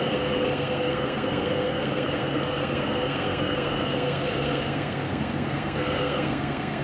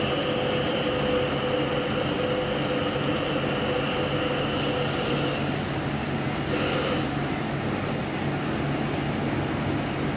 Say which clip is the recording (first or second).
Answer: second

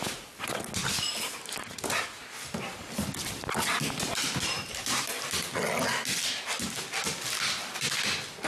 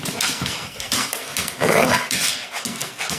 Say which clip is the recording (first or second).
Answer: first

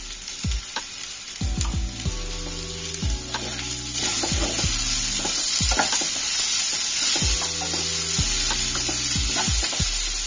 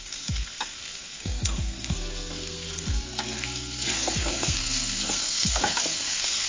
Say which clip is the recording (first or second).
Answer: first